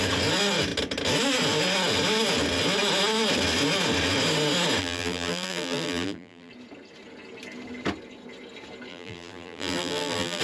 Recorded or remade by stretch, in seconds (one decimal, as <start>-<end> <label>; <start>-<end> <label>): 0.0-4.8 recorded; 4.8-6.5 remade; 6.5-8.9 recorded; 8.9-10.4 remade